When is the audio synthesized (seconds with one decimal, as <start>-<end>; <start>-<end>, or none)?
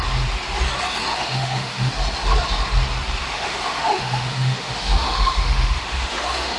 1.1-1.9; 3.2-6.6